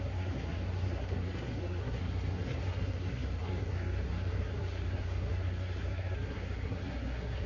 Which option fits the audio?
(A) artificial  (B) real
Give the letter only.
A